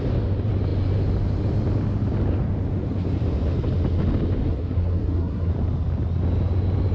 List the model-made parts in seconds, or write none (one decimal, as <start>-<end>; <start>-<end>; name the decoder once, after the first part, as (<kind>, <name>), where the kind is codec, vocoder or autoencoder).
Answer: 4.4-5.5 (codec, SNAC)